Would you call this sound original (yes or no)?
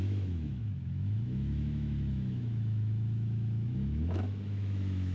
no